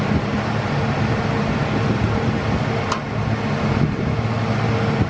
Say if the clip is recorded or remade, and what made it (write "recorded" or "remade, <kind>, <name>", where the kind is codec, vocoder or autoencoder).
recorded